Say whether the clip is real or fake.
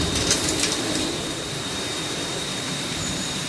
fake